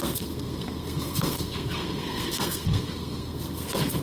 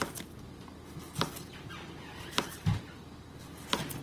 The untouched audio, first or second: second